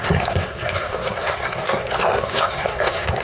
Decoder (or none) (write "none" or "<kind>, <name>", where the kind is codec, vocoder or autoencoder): codec, SNAC